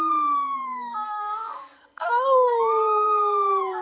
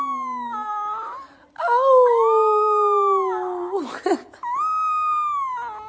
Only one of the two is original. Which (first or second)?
second